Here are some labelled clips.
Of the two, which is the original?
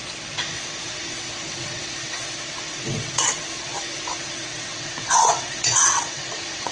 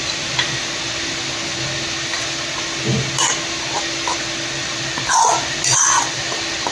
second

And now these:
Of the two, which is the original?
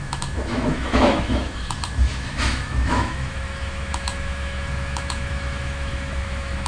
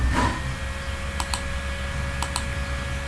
second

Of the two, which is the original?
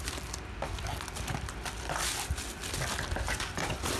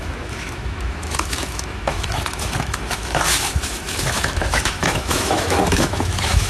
first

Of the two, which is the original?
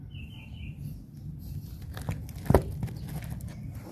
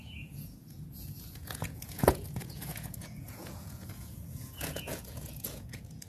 first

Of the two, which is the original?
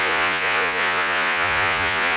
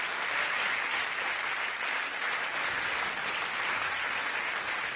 second